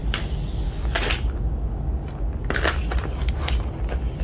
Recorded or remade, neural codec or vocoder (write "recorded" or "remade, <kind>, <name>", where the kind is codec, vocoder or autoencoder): recorded